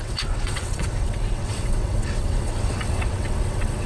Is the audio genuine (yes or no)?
no